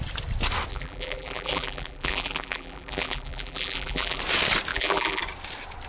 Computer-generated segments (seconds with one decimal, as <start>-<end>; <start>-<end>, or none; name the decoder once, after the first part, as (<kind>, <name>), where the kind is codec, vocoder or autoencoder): 0.7-4.2 (vocoder, BigVGAN v2); 4.7-5.2